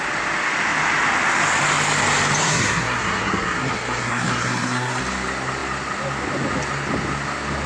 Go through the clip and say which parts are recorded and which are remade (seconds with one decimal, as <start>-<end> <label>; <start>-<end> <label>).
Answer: 0.0-2.4 recorded; 2.4-5.0 remade; 5.0-7.7 recorded